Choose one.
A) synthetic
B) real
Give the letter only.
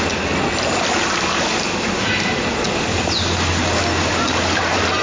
B